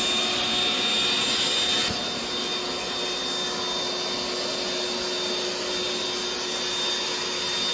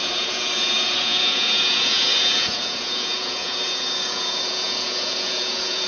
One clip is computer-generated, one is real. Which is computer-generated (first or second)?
second